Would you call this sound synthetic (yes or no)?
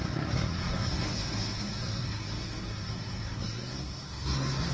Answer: yes